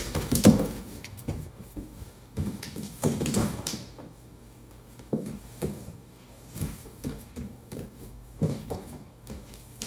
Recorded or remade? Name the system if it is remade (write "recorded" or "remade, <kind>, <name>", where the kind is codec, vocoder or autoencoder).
remade, codec, DAC